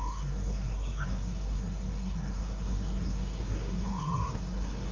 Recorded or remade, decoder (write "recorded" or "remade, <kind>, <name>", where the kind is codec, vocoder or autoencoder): remade, codec, SNAC